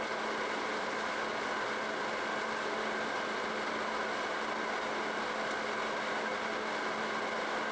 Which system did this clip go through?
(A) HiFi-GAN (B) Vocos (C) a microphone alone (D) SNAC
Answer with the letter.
C